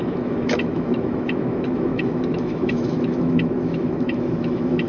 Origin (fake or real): fake